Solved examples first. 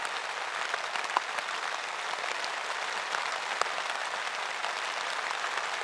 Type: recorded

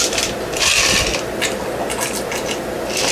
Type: recorded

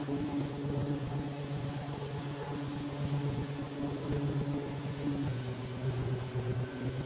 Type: remade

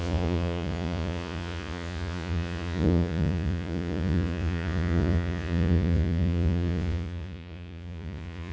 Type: remade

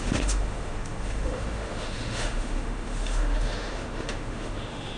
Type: remade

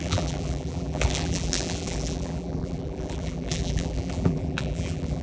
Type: remade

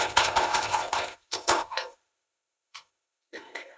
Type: remade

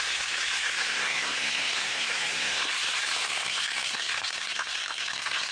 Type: remade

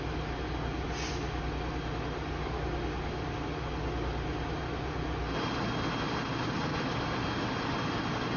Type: recorded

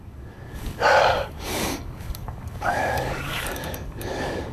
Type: remade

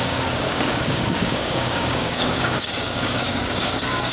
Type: remade